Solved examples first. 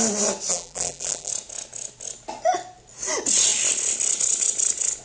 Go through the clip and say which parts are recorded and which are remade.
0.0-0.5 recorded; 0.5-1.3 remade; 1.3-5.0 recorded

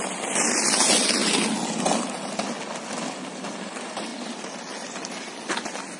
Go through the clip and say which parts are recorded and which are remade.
0.0-1.2 remade; 1.2-3.3 recorded; 3.3-6.0 remade

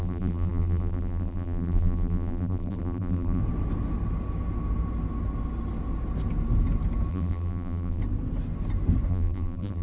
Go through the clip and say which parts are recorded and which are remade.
0.0-3.4 remade; 3.4-7.1 recorded; 7.1-8.0 remade; 8.0-9.1 recorded; 9.1-9.8 remade